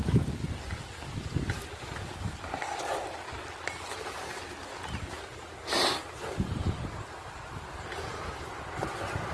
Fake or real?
real